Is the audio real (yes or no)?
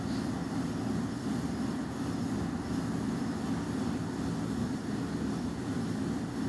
yes